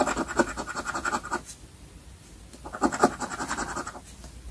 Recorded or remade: recorded